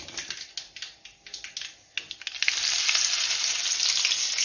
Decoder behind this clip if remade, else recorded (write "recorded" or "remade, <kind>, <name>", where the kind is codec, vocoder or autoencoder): recorded